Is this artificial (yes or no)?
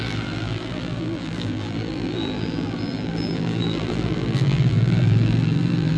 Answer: yes